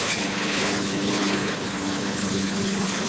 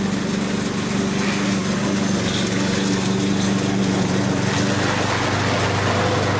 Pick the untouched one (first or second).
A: second